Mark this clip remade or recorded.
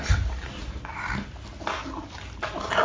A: recorded